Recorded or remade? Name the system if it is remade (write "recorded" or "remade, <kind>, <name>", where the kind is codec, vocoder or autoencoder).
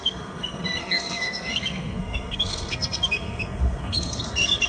remade, codec, SNAC